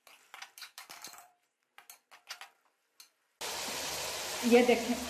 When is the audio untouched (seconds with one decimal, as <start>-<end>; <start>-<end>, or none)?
1.7-5.1